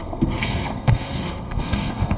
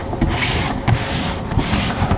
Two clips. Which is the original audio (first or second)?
second